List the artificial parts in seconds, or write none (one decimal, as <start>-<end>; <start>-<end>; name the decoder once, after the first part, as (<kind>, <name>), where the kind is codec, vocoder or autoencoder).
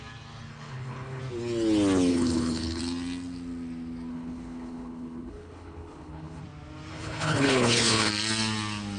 0.5-1.2 (codec, HILCodec); 2.1-2.8; 4.1-6.4; 6.9-8.1